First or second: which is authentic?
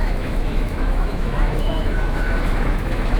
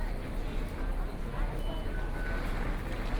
second